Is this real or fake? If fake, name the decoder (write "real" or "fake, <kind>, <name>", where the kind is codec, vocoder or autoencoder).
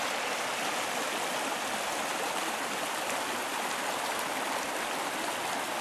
real